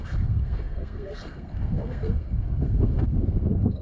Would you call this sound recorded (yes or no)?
no